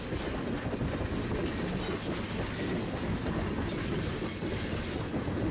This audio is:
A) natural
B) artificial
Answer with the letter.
A